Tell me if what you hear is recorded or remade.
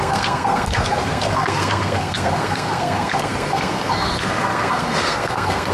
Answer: remade